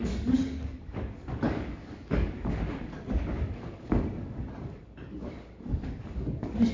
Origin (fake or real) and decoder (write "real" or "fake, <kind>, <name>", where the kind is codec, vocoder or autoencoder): fake, codec, DAC